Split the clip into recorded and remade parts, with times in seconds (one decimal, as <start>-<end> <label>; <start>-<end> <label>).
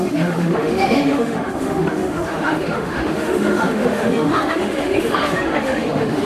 0.0-6.2 remade